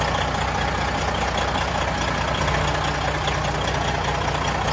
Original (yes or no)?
yes